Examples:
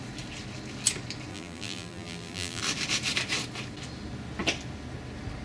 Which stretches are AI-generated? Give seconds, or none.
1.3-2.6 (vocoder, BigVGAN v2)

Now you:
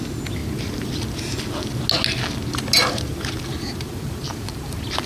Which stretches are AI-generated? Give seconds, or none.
0.4-0.9 (vocoder, BigVGAN v2); 2.8-5.1